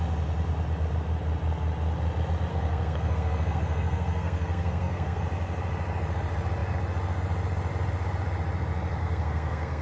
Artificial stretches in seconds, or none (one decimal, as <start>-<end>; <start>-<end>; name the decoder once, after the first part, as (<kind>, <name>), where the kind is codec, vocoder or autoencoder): 2.5-5.2 (codec, SNAC); 9.0-9.8